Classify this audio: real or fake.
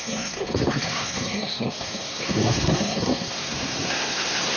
fake